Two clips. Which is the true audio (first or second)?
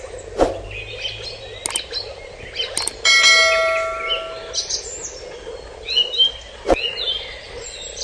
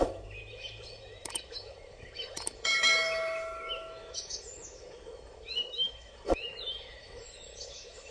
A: first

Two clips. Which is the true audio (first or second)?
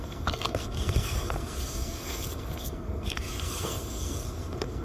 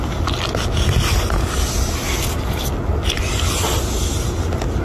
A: second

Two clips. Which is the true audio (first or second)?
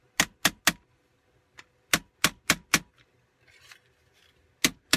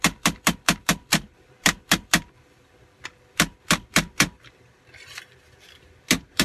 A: first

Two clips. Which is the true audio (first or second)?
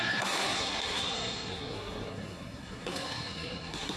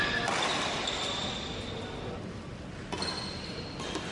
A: second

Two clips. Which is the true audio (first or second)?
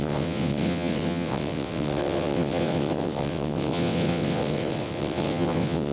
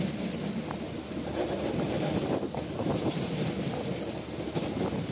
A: second